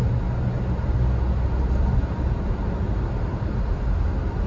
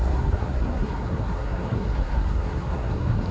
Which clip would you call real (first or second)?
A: first